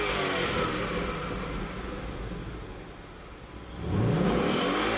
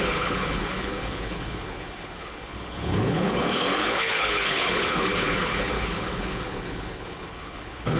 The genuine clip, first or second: first